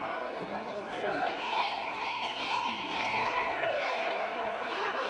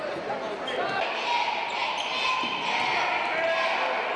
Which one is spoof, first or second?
first